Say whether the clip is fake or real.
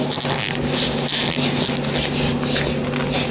real